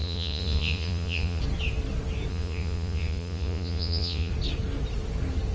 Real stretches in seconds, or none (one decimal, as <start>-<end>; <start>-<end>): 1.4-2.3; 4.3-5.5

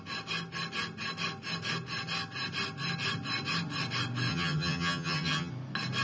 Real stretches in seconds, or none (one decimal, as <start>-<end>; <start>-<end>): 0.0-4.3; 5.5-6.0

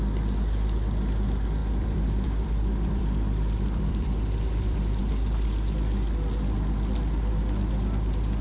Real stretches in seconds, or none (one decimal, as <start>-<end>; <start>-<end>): 0.0-1.6; 5.0-8.4

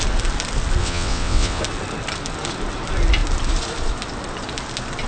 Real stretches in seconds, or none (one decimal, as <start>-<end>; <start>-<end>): 0.0-0.8; 1.6-5.1

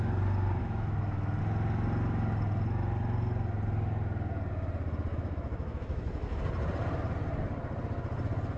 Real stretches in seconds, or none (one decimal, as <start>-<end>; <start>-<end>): 0.0-0.6; 1.4-5.1; 6.4-8.6

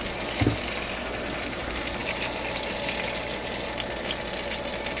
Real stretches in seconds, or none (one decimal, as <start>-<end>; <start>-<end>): 0.0-5.0

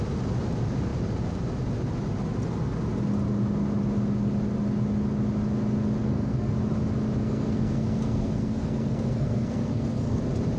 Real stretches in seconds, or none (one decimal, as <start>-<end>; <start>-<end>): 0.0-6.0; 6.5-7.2; 10.2-10.6